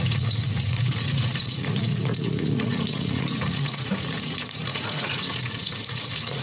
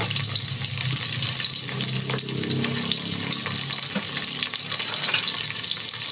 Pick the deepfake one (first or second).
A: first